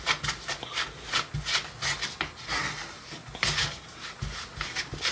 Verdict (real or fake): real